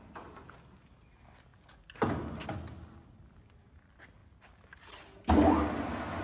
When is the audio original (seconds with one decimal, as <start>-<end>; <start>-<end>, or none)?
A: 0.0-6.2